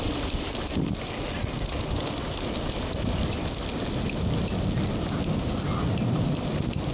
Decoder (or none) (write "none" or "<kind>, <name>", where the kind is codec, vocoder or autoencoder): none